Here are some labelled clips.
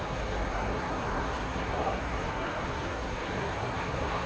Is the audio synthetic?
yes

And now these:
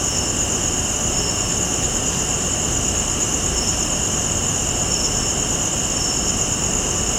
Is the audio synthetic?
no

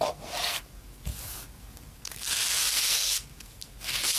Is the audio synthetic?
yes